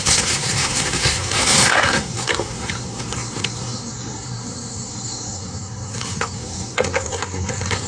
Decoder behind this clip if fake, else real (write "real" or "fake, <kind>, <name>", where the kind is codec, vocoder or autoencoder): fake, codec, SNAC